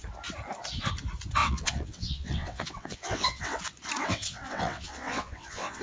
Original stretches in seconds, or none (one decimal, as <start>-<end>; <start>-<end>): 0.0-1.4; 3.6-4.0